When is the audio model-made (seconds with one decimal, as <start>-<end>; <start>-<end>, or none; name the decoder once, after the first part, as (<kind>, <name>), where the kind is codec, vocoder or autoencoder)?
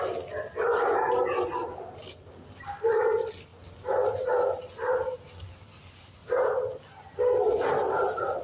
none